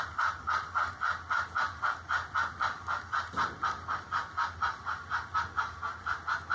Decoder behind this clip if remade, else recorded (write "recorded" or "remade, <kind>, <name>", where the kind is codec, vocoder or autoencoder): recorded